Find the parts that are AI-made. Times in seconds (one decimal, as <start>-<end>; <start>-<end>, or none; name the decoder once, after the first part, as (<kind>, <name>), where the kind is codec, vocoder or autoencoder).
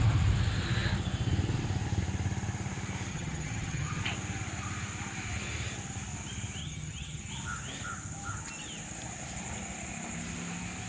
3.1-4.0 (vocoder, HiFi-GAN); 6.6-7.3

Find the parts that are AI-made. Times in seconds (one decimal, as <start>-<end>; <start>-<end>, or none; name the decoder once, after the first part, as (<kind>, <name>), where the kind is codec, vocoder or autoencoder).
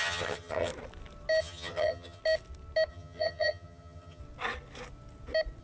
0.0-0.7 (vocoder, HiFi-GAN); 1.4-2.2; 2.9-4.2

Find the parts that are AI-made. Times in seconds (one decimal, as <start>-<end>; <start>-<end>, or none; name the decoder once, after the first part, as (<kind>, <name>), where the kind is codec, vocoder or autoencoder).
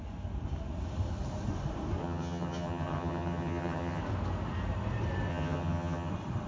2.0-4.0 (vocoder, HiFi-GAN); 5.3-6.1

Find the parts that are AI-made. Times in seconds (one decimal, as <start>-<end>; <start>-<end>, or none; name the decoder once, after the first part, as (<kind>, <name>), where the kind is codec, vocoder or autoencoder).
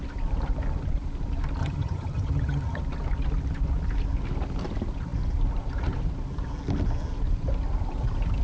1.6-2.8 (vocoder, HiFi-GAN)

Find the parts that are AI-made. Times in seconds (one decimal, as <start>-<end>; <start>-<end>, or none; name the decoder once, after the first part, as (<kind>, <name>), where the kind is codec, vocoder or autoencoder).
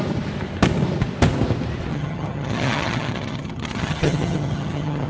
1.9-5.1 (vocoder, HiFi-GAN)